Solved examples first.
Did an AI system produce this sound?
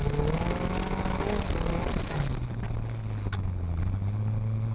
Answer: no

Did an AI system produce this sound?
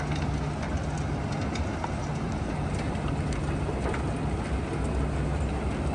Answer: no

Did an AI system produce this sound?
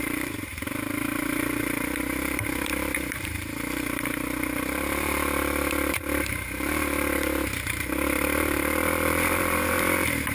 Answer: yes